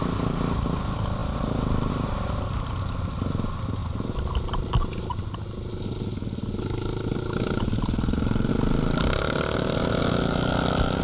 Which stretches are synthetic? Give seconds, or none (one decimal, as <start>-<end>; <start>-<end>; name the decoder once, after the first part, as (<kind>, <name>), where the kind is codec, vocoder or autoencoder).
none

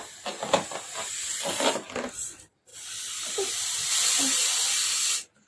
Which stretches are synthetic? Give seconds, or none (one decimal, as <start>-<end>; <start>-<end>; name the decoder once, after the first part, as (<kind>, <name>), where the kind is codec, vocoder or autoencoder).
none

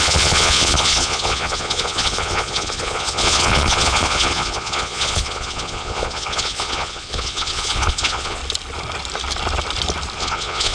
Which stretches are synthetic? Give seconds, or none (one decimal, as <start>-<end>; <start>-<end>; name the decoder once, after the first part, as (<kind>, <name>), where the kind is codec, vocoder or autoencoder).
0.0-8.4 (vocoder, Vocos); 10.2-10.7

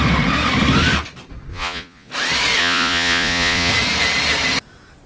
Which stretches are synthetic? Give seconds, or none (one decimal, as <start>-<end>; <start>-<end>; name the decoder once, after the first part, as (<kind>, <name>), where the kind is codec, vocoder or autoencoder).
1.5-2.1 (vocoder, Vocos); 2.6-3.7

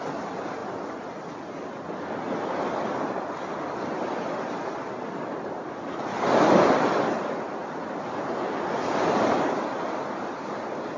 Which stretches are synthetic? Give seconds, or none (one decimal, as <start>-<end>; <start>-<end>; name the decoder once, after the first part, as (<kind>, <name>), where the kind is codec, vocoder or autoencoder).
none